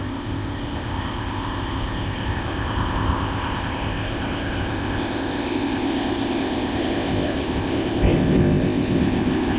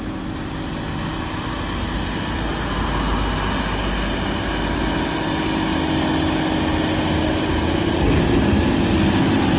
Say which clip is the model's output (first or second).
first